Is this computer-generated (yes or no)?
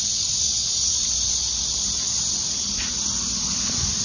no